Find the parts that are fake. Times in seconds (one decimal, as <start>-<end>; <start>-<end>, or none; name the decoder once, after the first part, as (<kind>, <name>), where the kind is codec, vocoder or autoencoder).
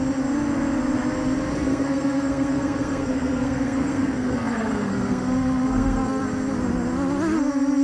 1.5-6.2 (codec, SNAC)